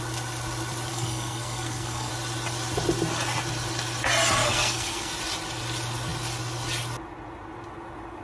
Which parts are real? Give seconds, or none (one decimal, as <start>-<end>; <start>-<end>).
0.0-0.9; 2.1-4.4; 5.1-8.2